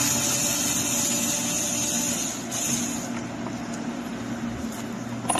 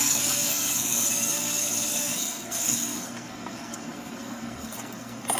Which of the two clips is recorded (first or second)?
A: first